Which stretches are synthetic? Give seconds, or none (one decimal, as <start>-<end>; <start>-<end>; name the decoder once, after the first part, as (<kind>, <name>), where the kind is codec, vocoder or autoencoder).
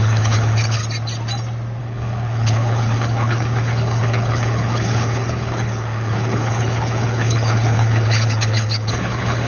0.0-0.8 (codec, HILCodec); 1.8-9.5